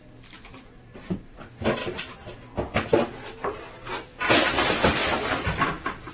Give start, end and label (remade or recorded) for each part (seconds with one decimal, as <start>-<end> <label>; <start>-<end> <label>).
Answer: 0.0-1.8 remade; 1.8-4.3 recorded; 4.3-5.0 remade; 5.0-6.1 recorded